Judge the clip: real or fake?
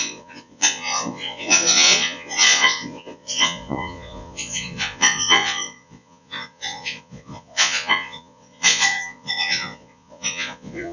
fake